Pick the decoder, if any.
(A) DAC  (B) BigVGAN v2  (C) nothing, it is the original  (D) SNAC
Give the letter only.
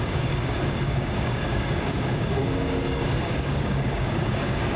A